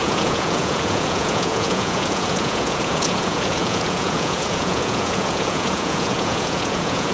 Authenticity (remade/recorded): remade